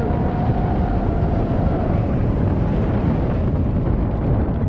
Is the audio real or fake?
real